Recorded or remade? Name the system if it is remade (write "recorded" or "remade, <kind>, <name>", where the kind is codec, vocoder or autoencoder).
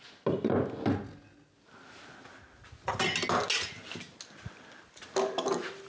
recorded